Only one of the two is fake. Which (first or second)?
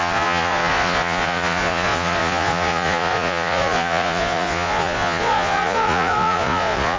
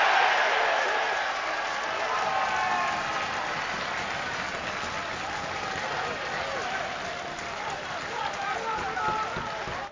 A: first